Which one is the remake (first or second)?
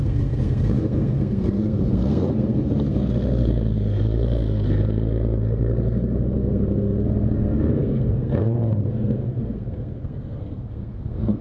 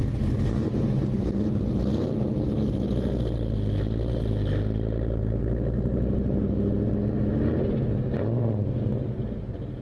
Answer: first